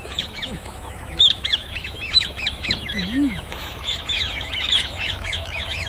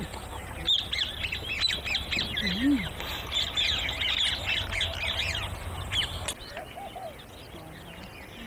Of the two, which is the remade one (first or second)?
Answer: first